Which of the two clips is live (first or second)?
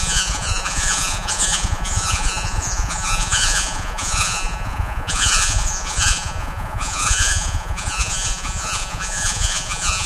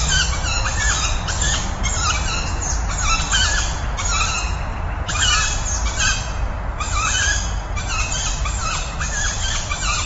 second